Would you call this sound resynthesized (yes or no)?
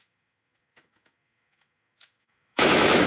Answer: yes